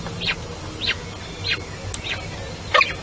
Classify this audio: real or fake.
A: real